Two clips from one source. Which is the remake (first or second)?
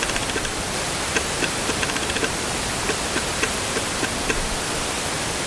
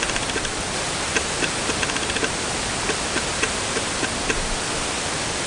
first